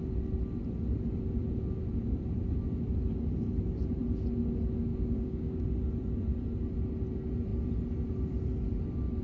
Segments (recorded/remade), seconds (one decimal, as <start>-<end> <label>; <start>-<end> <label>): 0.0-4.9 recorded; 4.9-5.6 remade; 5.6-9.2 recorded